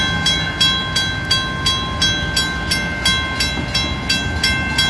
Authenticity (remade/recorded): recorded